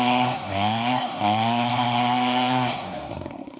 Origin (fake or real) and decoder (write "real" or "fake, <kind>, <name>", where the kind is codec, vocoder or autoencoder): fake, codec, SNAC